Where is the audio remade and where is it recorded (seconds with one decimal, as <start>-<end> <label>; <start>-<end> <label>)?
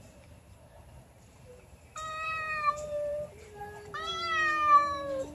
0.0-4.1 remade; 4.1-4.8 recorded; 4.8-5.3 remade